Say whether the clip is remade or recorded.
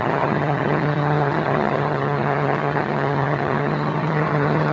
remade